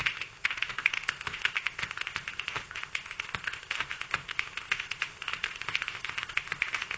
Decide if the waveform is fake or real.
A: fake